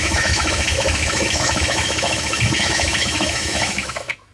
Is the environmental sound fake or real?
fake